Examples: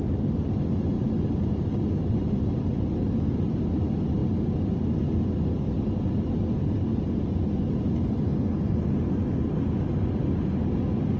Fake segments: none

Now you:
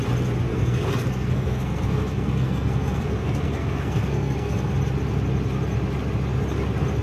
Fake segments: 0.5-4.7 (codec, SNAC)

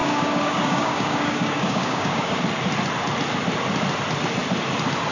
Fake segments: 0.0-2.4 (codec, DAC)

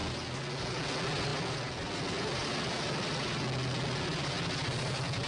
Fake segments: none